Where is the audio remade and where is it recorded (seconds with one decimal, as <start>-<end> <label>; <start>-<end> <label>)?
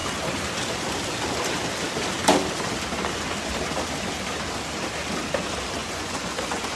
0.0-5.8 recorded; 5.8-6.8 remade